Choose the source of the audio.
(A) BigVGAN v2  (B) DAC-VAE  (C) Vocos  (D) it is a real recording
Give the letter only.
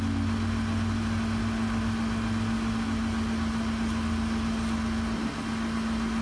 D